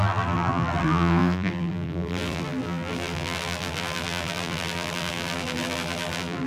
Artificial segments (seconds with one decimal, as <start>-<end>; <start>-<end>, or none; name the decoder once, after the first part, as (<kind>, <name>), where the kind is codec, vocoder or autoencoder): 0.0-6.5 (vocoder, BigVGAN v2)